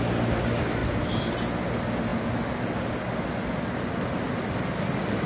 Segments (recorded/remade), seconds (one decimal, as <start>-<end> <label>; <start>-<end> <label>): 0.0-5.3 recorded